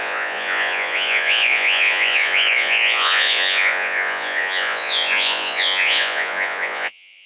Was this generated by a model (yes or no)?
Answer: yes